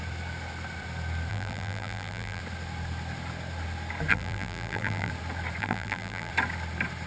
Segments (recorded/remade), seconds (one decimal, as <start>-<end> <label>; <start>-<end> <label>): 0.0-1.3 recorded; 1.3-2.4 remade; 2.4-4.1 recorded; 4.1-5.1 remade; 5.1-5.6 recorded; 5.6-6.3 remade; 6.3-7.1 recorded